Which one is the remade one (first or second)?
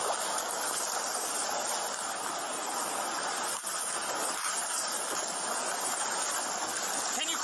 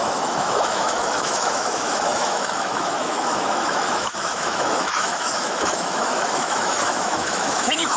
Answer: second